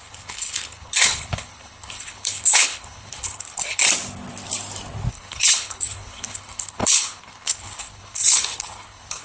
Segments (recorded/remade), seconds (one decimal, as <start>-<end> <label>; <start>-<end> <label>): 0.0-3.8 remade; 3.8-5.1 recorded; 5.1-9.2 remade